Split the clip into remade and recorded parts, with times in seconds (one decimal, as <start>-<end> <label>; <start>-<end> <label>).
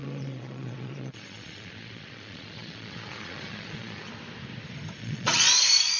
0.0-4.1 remade; 4.1-5.0 recorded; 5.0-6.0 remade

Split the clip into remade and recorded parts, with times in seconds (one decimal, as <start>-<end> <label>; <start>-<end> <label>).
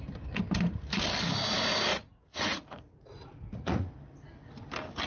0.0-1.9 recorded; 1.9-3.9 remade; 3.9-5.1 recorded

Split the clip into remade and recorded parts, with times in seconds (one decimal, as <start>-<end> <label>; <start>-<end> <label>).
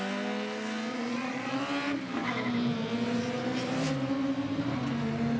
0.0-0.9 recorded; 0.9-1.6 remade; 1.6-5.4 recorded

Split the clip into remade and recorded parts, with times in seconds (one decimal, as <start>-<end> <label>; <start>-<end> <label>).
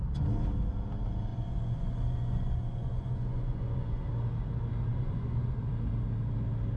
0.0-1.3 recorded; 1.3-4.0 remade; 4.0-4.9 recorded; 4.9-5.6 remade; 5.6-6.8 recorded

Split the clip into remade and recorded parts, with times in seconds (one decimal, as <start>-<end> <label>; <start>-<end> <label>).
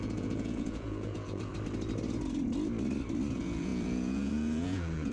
0.0-1.5 remade; 1.5-3.3 recorded; 3.3-5.1 remade